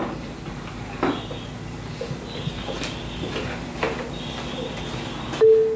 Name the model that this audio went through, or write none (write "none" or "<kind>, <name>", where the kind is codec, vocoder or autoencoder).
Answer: none